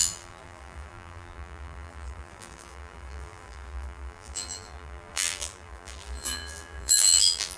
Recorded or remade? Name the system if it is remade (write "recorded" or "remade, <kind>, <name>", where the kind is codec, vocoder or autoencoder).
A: remade, vocoder, BigVGAN v2